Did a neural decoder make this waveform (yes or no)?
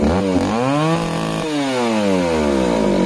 no